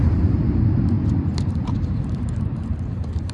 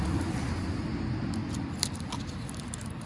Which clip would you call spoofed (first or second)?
first